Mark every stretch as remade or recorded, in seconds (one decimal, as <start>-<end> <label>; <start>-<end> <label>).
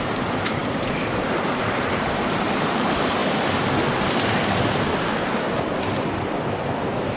0.0-3.2 remade; 3.2-6.5 recorded; 6.5-7.2 remade